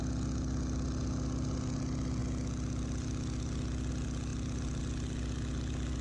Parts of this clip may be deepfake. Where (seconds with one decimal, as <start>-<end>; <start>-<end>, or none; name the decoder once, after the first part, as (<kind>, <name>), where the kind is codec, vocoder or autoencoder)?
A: none